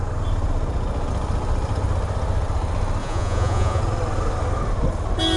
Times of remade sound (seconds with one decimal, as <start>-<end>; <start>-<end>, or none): 3.0-3.8